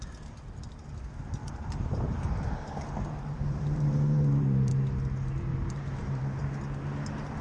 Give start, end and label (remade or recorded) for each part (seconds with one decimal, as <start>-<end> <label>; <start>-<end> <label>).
0.0-1.4 recorded; 1.4-4.7 remade; 4.7-5.5 recorded; 5.5-6.4 remade; 6.4-7.4 recorded